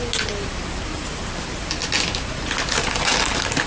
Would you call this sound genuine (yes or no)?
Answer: yes